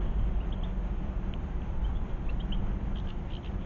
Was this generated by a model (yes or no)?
yes